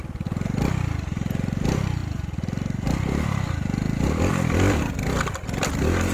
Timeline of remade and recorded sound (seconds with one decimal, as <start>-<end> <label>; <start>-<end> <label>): 0.0-1.2 recorded; 1.2-6.1 remade